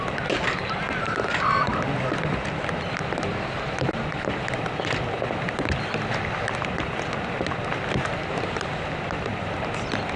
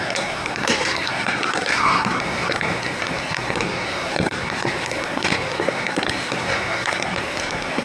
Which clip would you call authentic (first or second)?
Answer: first